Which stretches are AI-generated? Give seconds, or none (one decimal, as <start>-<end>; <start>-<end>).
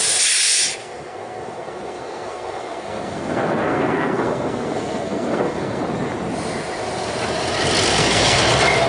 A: 0.8-5.8; 7.9-8.4